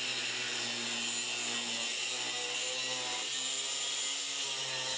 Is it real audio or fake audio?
real